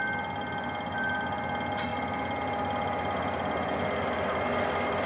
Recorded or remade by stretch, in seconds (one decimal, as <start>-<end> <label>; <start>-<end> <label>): 0.0-5.1 recorded